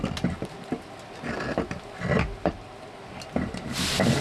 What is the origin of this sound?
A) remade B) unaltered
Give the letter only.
B